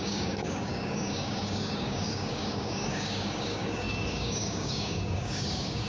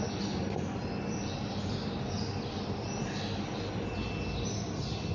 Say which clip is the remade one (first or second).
first